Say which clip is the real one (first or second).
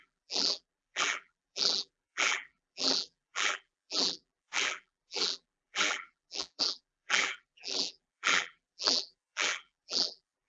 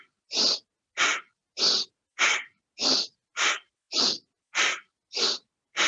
second